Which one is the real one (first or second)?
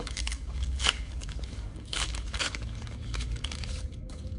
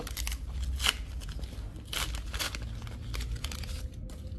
second